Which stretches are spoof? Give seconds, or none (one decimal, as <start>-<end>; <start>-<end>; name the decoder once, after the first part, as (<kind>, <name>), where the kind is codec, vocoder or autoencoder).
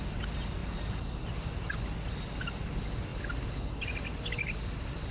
none